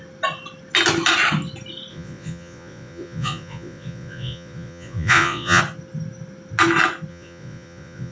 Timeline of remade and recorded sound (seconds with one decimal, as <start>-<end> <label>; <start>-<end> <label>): 0.0-1.9 recorded; 1.9-5.6 remade; 5.6-7.1 recorded; 7.1-8.1 remade